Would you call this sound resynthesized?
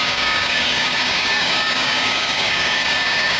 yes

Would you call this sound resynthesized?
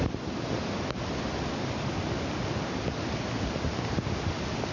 no